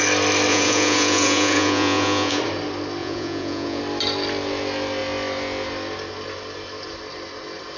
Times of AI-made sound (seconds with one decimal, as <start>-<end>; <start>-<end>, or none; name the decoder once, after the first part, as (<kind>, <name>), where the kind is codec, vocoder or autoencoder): 0.5-2.4 (vocoder, Vocos); 3.0-3.8